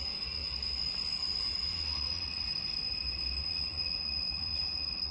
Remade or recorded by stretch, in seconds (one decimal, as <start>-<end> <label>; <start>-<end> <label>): 0.0-0.4 remade; 0.4-1.5 recorded; 1.5-2.5 remade; 2.5-3.4 recorded; 3.4-5.1 remade